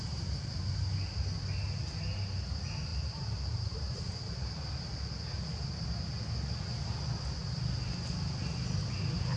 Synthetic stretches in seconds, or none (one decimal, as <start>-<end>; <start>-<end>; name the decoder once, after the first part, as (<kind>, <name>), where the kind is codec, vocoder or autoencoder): 2.9-4.7 (vocoder, BigVGAN v2)